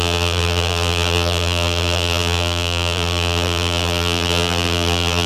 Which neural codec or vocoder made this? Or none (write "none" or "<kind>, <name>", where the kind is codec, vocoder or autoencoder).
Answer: vocoder, BigVGAN v2